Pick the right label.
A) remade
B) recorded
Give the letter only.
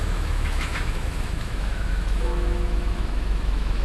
A